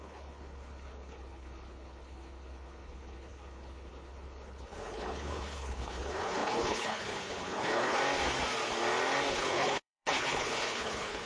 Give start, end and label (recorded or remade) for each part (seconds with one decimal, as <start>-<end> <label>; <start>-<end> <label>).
0.0-8.0 remade; 8.0-9.3 recorded; 9.3-11.3 remade